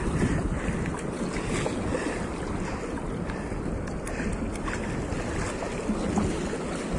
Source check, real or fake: real